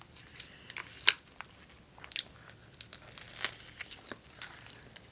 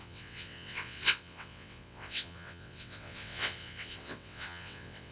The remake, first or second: second